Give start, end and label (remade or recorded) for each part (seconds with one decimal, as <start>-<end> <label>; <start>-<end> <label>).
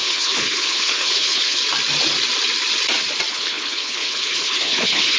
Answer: 0.0-1.6 remade; 1.6-3.3 recorded; 3.3-5.2 remade